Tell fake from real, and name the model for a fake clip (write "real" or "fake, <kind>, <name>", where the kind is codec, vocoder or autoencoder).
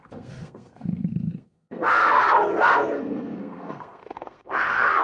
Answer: fake, codec, SNAC